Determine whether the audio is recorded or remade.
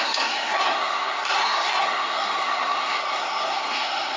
remade